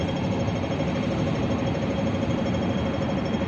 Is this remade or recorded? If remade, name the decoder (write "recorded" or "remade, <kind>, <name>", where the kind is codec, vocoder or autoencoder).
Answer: recorded